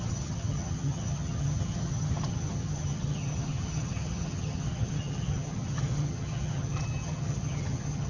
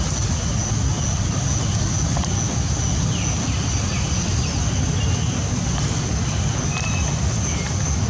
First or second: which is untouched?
second